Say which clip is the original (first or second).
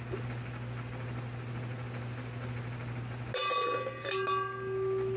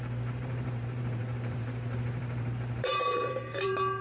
first